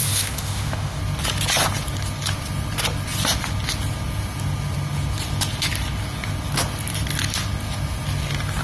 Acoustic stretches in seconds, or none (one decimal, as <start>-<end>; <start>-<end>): 1.0-8.6